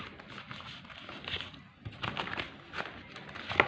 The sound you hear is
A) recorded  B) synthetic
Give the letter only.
A